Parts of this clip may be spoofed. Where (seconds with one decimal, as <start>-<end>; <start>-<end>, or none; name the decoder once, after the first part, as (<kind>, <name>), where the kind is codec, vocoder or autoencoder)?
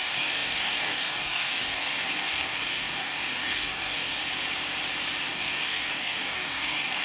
0.0-4.2 (codec, DAC); 5.2-7.0